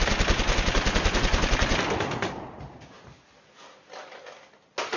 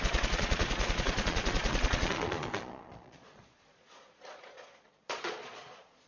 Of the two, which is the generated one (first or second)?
second